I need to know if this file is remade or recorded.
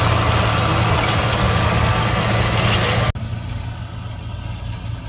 recorded